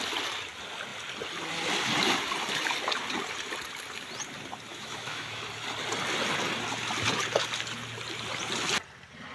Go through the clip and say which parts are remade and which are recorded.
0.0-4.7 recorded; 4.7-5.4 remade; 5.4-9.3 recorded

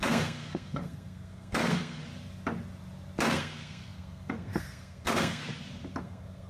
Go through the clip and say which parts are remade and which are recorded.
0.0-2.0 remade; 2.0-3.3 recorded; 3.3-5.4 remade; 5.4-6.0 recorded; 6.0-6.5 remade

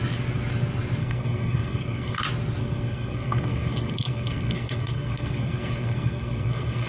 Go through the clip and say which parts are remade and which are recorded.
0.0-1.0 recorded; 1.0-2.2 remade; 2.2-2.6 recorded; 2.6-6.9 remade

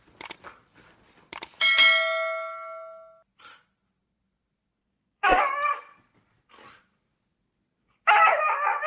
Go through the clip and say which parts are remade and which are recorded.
0.0-4.8 recorded; 4.8-5.4 remade; 5.4-8.9 recorded